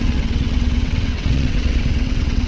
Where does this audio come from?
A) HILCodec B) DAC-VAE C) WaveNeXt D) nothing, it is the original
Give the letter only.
C